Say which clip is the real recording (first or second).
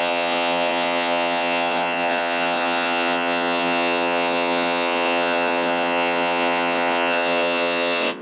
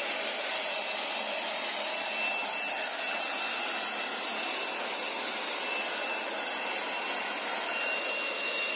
second